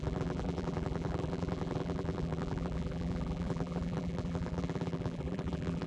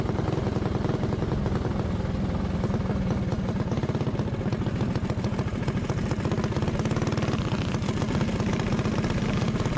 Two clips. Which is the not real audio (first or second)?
first